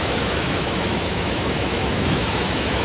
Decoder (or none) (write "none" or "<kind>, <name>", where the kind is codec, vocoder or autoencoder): autoencoder, DAC-VAE